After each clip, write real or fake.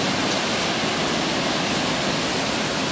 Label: real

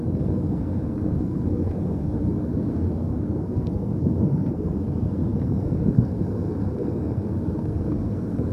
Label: fake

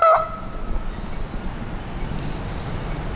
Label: real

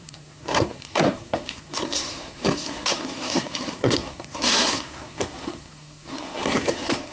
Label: fake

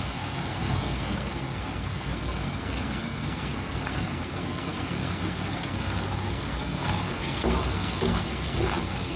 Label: fake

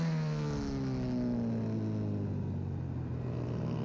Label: real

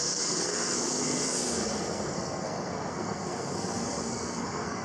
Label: fake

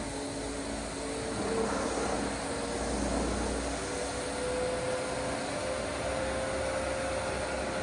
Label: real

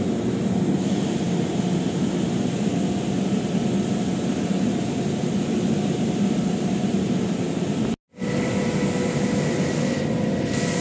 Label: real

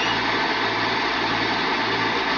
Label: real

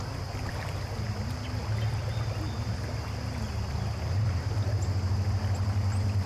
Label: real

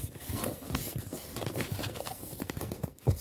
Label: fake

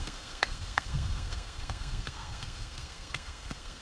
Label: fake